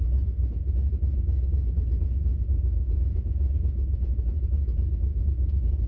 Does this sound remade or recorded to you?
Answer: remade